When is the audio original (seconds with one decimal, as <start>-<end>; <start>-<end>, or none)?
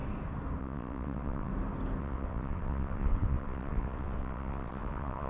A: 0.0-0.6; 1.5-2.0